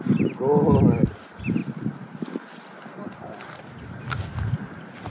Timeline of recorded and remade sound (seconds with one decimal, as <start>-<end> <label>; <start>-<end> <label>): 0.0-5.1 recorded